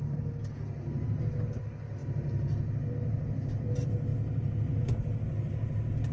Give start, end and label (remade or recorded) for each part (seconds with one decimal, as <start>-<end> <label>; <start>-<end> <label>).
0.0-6.1 recorded